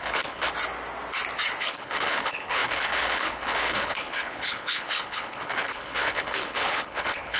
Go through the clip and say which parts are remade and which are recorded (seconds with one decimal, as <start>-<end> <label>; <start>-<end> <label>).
0.0-0.5 remade; 0.5-1.6 recorded; 1.6-7.4 remade